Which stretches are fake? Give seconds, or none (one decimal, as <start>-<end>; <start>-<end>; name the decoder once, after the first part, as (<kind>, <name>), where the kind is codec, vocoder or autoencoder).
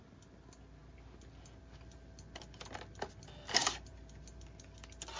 none